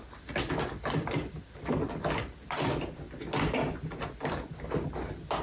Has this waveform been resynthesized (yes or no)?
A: no